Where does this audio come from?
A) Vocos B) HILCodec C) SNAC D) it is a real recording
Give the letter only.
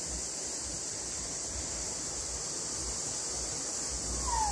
D